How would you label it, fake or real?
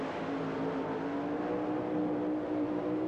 real